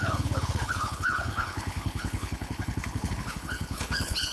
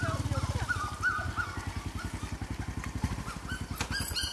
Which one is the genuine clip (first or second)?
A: second